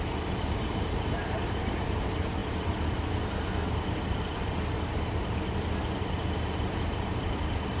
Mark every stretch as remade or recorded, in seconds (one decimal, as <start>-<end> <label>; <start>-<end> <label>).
0.0-2.4 remade; 2.4-6.1 recorded; 6.1-7.8 remade